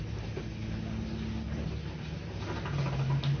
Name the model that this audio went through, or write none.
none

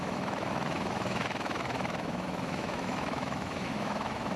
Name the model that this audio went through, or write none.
autoencoder, DAC-VAE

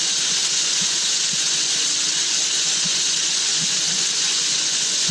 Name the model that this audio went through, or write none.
vocoder, Vocos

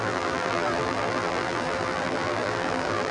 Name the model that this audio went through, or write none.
vocoder, BigVGAN v2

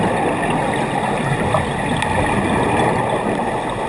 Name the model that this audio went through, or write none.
none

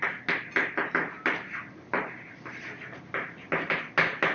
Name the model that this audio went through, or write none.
none